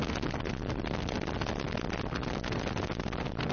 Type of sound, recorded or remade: recorded